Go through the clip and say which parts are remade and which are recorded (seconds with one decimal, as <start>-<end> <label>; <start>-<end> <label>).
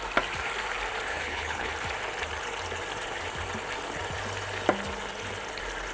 0.0-1.1 recorded; 1.1-1.7 remade; 1.7-5.9 recorded